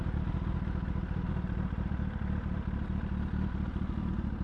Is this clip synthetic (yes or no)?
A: yes